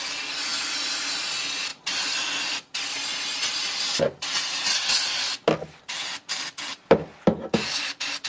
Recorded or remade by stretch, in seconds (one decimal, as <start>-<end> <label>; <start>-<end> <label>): 0.0-8.3 recorded